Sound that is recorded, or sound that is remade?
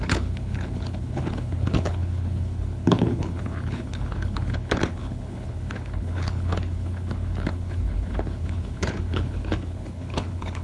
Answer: remade